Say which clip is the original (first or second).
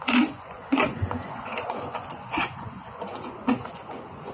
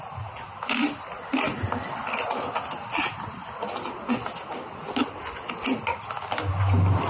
second